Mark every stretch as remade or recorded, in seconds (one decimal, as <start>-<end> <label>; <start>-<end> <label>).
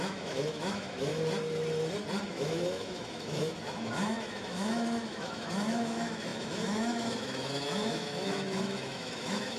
0.0-1.1 remade; 1.1-2.3 recorded; 2.3-9.6 remade